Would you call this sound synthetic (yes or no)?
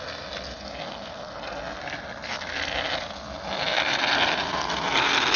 no